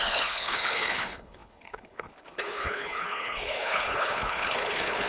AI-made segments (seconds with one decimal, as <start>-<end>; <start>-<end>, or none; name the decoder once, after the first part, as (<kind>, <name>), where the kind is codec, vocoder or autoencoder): 0.0-5.1 (codec, HILCodec)